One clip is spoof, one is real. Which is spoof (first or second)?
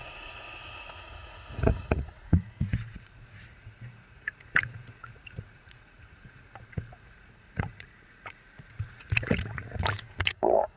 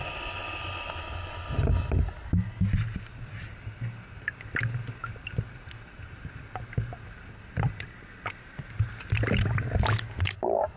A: first